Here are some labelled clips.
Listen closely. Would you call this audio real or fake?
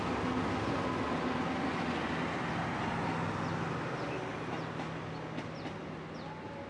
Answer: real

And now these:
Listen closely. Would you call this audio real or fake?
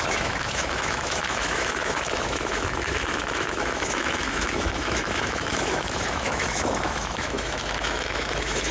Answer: fake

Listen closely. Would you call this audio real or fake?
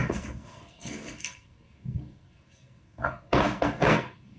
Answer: fake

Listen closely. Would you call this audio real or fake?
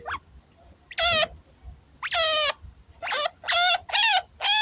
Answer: real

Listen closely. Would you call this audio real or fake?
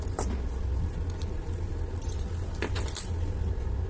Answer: real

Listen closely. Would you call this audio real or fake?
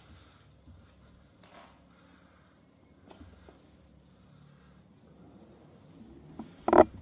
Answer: real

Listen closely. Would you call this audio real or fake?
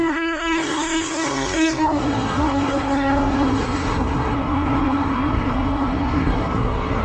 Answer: fake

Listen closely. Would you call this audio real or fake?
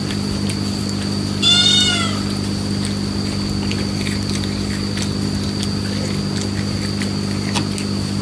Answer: real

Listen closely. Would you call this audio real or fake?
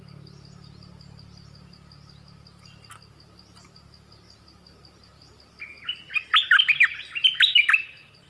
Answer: real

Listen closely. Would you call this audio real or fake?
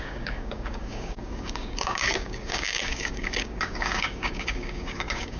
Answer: fake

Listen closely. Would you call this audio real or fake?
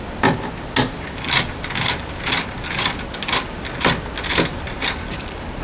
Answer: real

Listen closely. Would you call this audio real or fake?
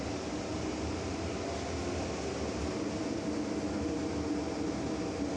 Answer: real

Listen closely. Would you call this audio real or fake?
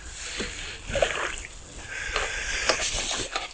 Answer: real